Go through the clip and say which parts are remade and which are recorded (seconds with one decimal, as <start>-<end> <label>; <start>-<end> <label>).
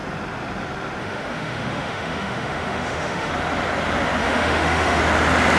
0.0-1.0 recorded; 1.0-3.3 remade; 3.3-4.2 recorded; 4.2-5.0 remade; 5.0-5.6 recorded